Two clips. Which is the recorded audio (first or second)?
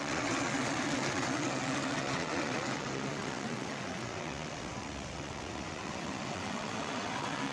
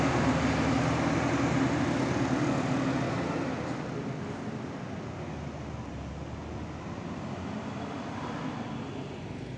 second